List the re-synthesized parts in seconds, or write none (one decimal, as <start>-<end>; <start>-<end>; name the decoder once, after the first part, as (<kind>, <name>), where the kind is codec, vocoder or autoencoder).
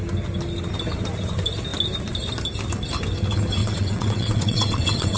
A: 3.6-5.2 (vocoder, WaveNeXt)